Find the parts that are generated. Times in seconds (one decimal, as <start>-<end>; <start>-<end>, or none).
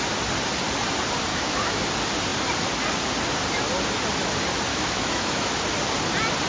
1.3-1.8; 4.7-5.5